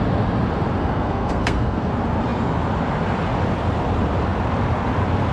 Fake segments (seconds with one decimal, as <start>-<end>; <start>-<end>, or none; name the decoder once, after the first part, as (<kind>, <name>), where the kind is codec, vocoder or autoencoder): 0.8-1.9 (codec, SNAC)